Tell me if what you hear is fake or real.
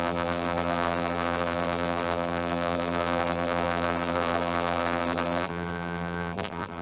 fake